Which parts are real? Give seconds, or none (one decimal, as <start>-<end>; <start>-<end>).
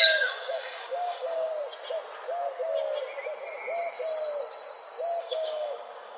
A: 1.5-5.2